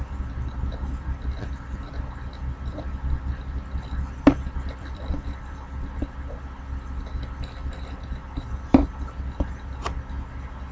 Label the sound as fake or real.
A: real